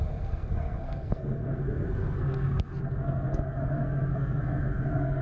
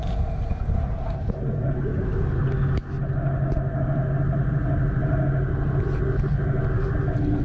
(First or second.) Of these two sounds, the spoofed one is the first